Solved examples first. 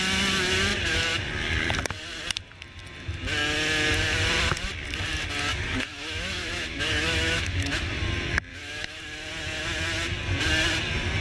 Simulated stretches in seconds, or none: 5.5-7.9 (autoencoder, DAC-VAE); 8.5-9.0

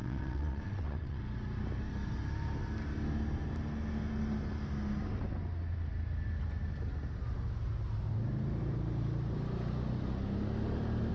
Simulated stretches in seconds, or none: 0.0-1.2 (vocoder, WaveNeXt)

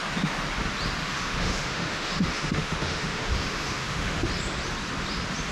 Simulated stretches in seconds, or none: 1.0-4.3 (autoencoder, DAC-VAE)

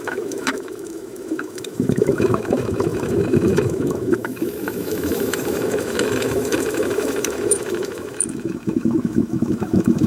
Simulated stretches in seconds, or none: 0.0-10.1 (autoencoder, DAC-VAE)

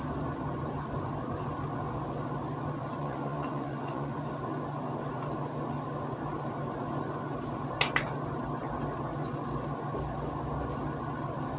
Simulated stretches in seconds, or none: 3.0-4.2 (vocoder, Vocos)

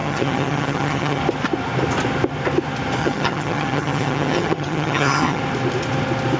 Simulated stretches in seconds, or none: 0.0-1.2 (vocoder, HiFi-GAN); 3.0-5.4

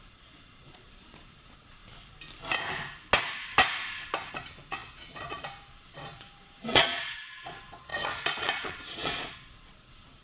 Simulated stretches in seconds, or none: 0.0-1.8 (vocoder, Vocos); 4.3-10.2

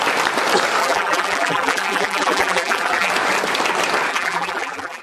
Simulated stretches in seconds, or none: 0.8-3.1 (vocoder, BigVGAN v2); 4.1-5.0